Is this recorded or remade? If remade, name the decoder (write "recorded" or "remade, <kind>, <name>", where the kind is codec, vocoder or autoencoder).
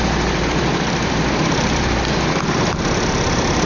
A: remade, vocoder, BigVGAN v2